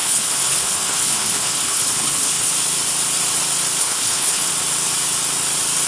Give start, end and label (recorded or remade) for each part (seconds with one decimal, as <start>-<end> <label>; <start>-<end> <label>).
0.0-2.5 remade; 2.5-3.8 recorded; 3.8-4.5 remade; 4.5-5.9 recorded